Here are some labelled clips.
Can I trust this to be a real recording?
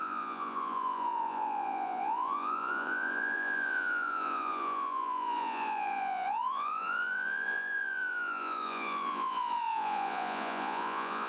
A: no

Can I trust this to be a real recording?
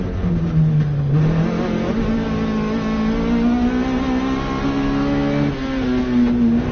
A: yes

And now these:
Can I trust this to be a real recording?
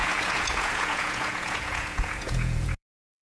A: no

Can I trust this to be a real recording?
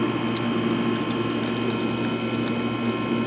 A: yes